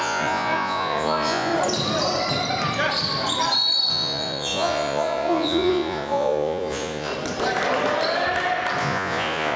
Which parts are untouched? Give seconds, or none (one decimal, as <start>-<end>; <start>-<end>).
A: 1.5-3.9; 7.1-8.8